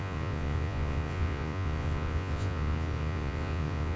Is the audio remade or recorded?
remade